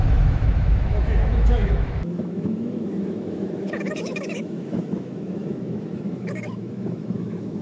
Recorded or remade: remade